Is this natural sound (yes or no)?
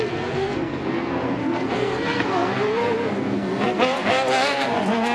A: no